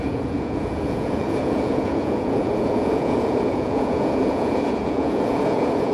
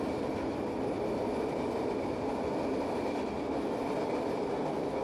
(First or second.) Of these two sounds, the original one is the second